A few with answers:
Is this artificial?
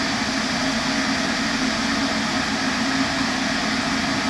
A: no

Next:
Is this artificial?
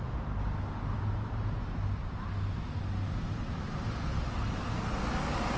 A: no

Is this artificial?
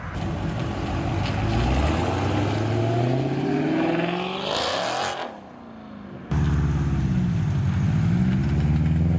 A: no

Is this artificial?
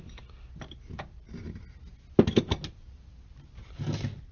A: no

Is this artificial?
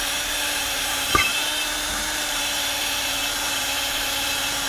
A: yes